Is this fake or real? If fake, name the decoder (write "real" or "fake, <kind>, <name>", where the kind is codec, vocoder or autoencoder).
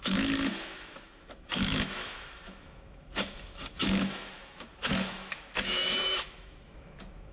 fake, autoencoder, DAC-VAE